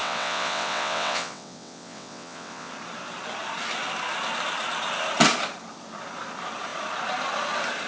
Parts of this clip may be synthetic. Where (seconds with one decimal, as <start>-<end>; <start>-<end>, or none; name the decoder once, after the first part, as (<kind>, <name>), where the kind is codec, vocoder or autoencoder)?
0.0-2.7 (vocoder, WaveNeXt)